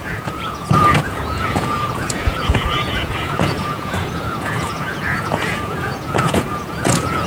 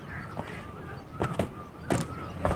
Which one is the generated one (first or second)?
first